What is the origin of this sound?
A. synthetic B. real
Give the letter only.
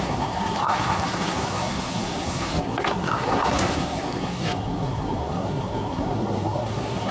A